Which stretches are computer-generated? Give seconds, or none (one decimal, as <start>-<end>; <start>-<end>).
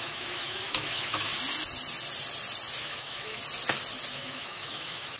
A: 0.0-1.3; 2.8-3.4; 4.1-5.2